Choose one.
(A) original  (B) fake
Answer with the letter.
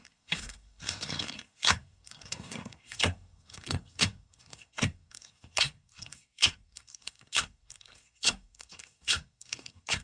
B